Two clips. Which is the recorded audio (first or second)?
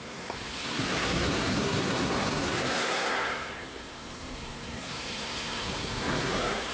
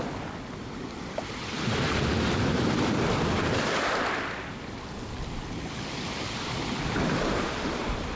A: second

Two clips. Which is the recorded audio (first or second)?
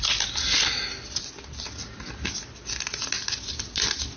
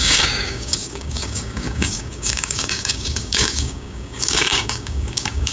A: first